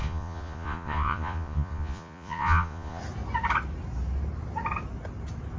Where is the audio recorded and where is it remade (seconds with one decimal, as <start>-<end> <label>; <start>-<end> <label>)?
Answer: 0.0-3.0 remade; 3.0-5.6 recorded